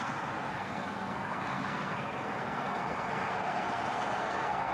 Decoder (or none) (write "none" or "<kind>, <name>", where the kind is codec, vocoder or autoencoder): codec, SNAC